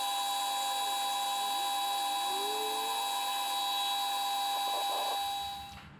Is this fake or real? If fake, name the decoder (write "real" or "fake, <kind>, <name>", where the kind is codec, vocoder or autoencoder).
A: real